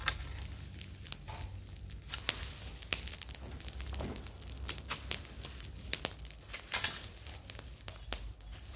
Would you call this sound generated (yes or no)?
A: no